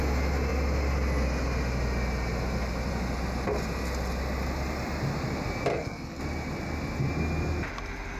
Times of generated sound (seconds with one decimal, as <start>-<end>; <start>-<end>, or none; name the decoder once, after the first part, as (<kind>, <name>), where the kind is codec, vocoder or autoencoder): 5.7-6.2 (codec, SNAC)